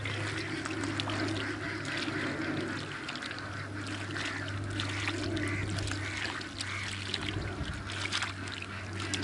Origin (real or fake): real